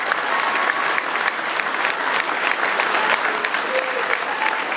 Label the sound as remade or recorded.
recorded